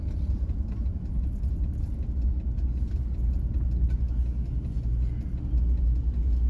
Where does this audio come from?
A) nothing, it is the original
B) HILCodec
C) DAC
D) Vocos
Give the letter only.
A